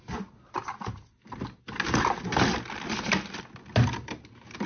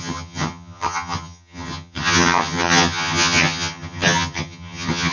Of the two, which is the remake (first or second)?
second